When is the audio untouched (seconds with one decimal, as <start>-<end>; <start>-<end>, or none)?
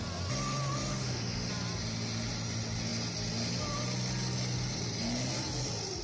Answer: 0.0-0.9; 1.5-6.0